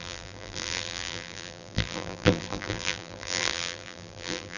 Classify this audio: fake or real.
fake